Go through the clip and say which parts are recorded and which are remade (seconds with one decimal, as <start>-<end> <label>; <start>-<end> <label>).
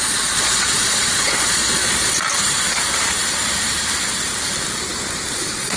0.0-1.8 remade; 1.8-5.3 recorded; 5.3-5.8 remade